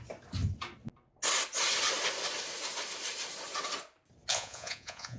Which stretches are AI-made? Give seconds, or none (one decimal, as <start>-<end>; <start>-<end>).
4.3-5.2

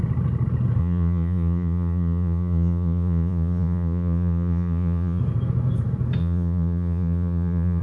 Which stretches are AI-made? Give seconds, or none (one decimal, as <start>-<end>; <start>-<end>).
0.8-5.2; 6.2-7.8